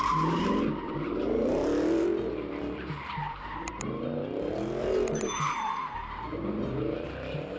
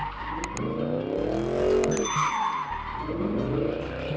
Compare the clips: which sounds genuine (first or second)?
second